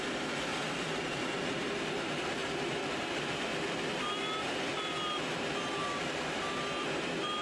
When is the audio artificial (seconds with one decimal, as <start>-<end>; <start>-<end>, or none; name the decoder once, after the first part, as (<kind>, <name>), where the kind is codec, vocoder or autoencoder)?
0.5-1.2 (vocoder, BigVGAN v2)